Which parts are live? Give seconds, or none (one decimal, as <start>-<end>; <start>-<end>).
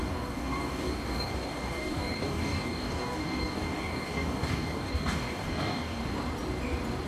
6.0-7.1